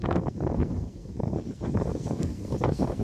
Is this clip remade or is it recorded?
remade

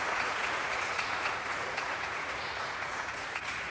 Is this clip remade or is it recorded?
remade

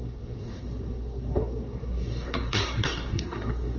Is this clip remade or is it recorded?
remade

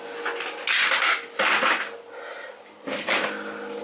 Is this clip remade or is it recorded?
recorded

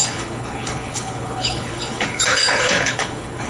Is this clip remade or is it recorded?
remade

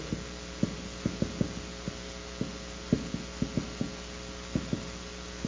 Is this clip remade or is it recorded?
recorded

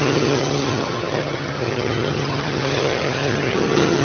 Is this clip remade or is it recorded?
remade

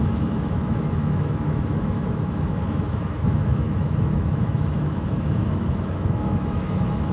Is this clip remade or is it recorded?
remade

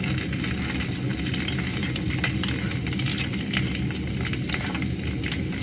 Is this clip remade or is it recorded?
recorded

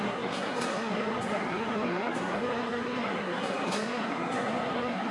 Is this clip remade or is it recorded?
remade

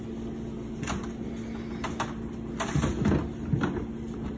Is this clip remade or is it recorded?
recorded